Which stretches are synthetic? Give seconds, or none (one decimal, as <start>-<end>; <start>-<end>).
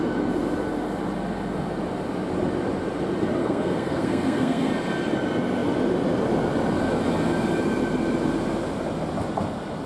3.4-4.7